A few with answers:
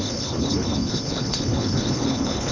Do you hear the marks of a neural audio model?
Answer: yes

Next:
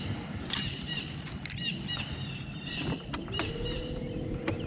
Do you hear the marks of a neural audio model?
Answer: yes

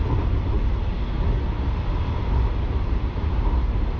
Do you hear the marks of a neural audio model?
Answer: no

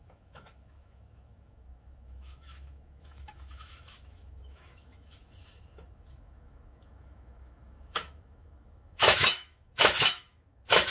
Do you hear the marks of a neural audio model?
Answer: yes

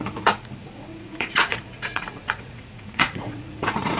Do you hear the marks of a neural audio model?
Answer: yes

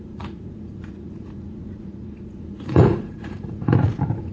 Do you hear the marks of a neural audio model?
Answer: yes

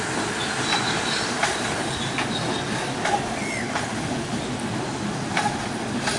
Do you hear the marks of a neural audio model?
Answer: no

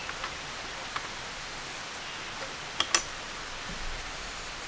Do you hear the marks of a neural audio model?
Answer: no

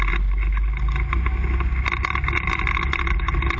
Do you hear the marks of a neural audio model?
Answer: no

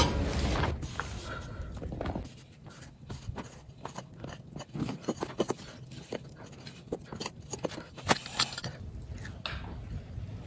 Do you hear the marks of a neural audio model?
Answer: no